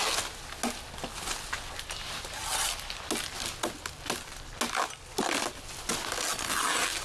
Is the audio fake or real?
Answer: real